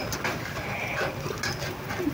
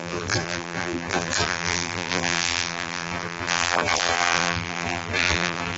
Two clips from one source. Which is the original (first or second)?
first